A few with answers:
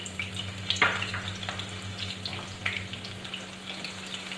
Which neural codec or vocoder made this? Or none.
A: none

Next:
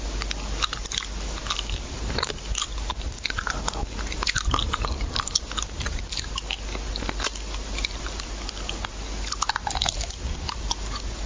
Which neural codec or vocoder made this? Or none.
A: none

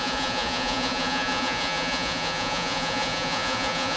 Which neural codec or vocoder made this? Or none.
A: vocoder, Vocos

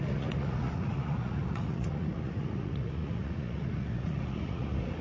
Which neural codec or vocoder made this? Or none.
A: vocoder, Vocos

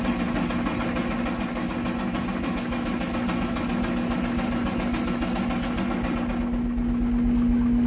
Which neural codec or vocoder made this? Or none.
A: none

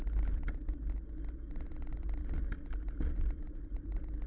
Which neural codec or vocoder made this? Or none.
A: none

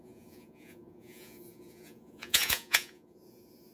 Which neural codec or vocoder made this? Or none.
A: vocoder, Vocos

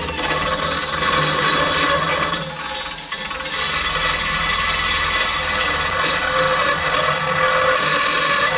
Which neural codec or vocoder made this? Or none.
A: none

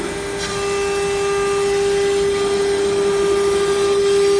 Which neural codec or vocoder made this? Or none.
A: none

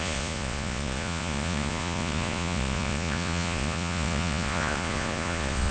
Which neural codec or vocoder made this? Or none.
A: vocoder, Vocos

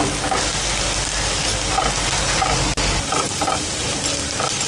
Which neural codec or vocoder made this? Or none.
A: none